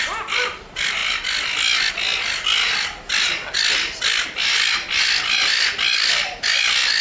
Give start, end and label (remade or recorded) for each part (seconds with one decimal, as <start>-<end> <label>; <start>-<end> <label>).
0.0-7.0 recorded